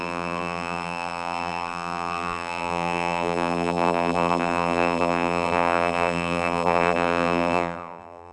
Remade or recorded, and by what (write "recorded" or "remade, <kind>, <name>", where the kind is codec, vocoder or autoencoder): remade, vocoder, BigVGAN v2